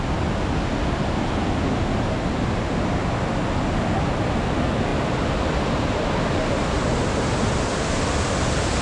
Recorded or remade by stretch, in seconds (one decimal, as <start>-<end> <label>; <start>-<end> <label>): 0.0-8.8 recorded